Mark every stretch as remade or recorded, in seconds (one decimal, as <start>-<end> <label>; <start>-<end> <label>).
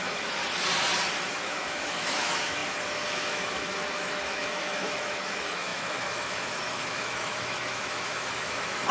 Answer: 0.0-0.4 remade; 0.4-1.3 recorded; 1.3-8.9 remade